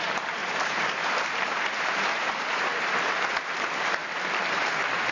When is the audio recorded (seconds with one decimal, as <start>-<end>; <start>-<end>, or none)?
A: 4.0-4.5